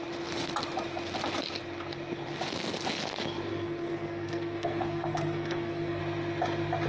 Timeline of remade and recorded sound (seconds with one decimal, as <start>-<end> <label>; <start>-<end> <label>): 0.0-3.5 recorded; 3.5-6.0 remade; 6.0-6.9 recorded